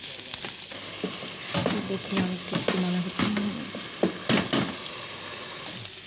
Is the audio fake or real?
real